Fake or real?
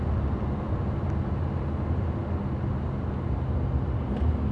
real